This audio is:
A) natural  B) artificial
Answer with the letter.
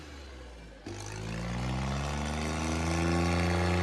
A